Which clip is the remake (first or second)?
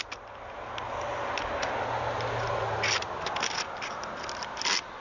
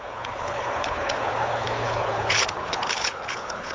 second